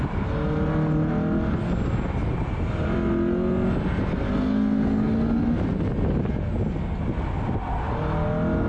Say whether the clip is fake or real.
real